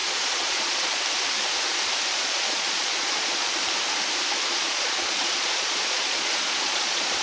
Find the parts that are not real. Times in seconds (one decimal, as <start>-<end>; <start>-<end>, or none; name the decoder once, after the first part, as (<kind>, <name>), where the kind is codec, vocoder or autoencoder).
0.0-1.0 (vocoder, Vocos); 2.1-3.5; 4.5-7.2